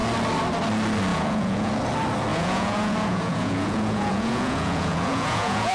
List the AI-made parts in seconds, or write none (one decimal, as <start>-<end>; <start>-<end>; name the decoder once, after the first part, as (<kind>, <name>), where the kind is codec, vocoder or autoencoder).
1.1-1.7 (vocoder, Vocos); 2.3-5.7